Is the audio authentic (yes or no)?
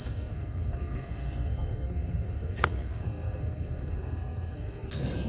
no